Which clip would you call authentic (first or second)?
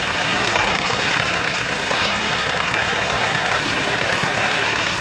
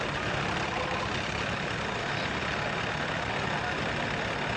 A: second